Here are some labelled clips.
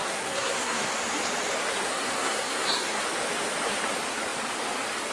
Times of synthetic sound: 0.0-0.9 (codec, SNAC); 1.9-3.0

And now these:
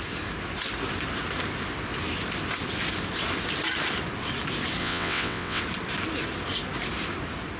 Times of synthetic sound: 4.8-5.6 (vocoder, WaveNeXt)

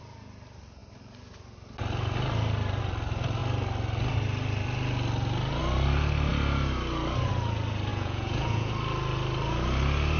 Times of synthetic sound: 7.9-8.7 (vocoder, Vocos)

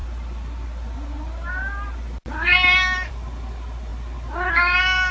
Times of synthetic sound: none

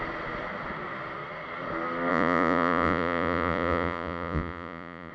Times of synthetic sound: 2.1-5.1 (vocoder, Vocos)

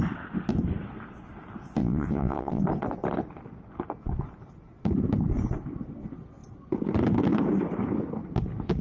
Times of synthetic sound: 1.8-2.6 (vocoder, WaveNeXt)

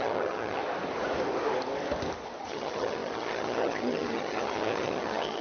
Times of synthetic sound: 0.0-0.6 (vocoder, HiFi-GAN); 2.4-5.4